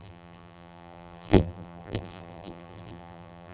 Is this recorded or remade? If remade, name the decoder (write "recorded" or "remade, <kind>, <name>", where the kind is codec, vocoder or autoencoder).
remade, vocoder, BigVGAN v2